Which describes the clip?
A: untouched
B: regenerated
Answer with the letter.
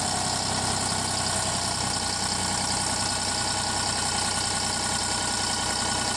A